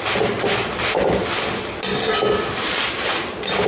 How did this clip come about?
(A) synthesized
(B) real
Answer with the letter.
B